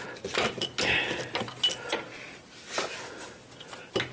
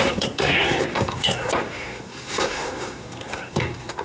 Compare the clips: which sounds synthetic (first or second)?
second